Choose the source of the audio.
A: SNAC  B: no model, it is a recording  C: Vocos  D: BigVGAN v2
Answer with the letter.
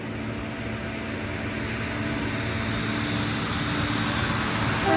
B